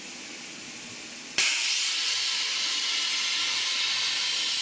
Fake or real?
real